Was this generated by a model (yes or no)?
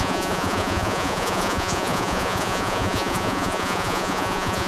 yes